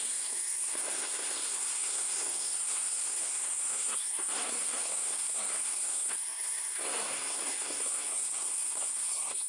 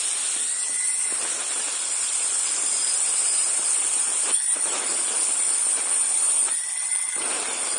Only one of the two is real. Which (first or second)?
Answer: second